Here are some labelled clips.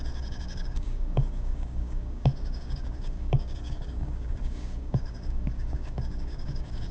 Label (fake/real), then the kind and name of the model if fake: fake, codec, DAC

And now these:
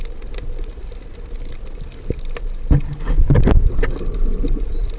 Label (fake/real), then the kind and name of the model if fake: real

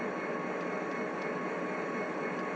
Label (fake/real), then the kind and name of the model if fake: real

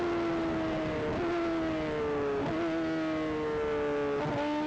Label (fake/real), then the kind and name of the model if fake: real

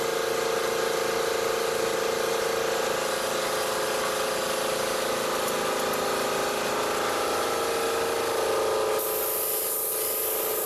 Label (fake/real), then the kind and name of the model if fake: real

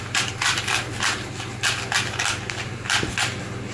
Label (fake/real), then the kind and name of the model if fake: real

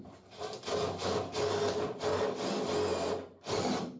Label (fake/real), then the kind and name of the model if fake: real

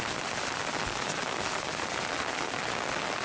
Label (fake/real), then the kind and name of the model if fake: real